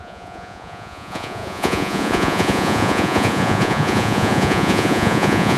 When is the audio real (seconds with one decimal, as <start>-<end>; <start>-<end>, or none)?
none